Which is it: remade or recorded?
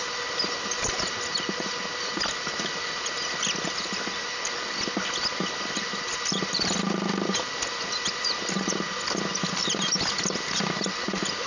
recorded